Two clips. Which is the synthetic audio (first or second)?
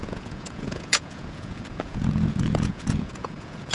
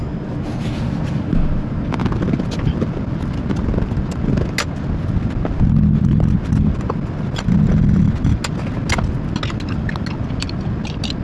first